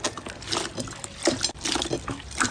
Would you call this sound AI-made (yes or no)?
no